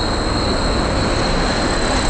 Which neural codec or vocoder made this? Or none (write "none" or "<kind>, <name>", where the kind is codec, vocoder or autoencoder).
none